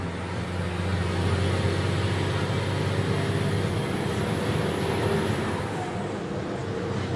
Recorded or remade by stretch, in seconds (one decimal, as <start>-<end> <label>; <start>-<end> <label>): 0.0-7.2 recorded